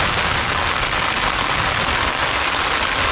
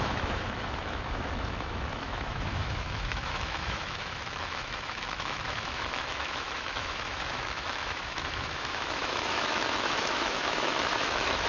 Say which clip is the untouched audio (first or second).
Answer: first